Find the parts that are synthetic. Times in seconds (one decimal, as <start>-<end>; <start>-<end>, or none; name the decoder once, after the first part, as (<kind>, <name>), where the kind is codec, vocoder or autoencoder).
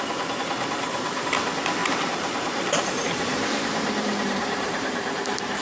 1.8-2.8 (vocoder, BigVGAN v2); 3.3-5.6